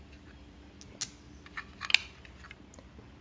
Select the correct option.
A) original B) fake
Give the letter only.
A